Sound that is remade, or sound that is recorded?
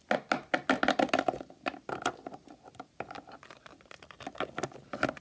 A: recorded